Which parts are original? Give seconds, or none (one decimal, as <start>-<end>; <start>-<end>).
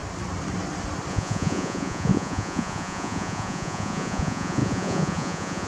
0.0-1.1